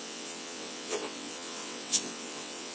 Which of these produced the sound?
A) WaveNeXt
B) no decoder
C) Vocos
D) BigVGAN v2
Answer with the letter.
A